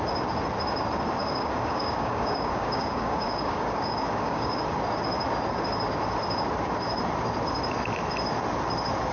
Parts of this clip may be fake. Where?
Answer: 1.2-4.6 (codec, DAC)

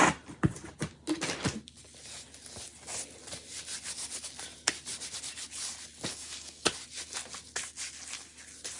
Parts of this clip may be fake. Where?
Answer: 6.1-6.7 (codec, DAC)

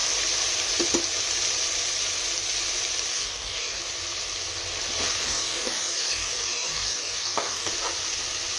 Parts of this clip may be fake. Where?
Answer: 3.1-3.8 (codec, DAC); 5.2-7.7

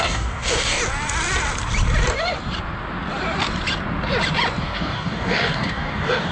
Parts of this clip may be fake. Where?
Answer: 0.0-0.8 (codec, DAC); 4.6-6.3

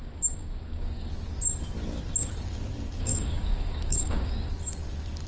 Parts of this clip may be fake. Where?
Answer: 0.0-1.1 (codec, DAC); 3.0-4.5

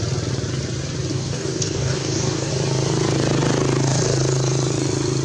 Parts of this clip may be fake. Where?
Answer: 1.1-2.5 (codec, DAC)